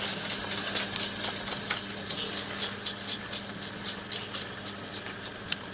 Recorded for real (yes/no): yes